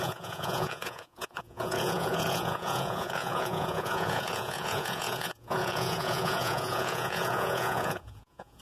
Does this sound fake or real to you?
fake